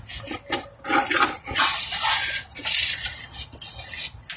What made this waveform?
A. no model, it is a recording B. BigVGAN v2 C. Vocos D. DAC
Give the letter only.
A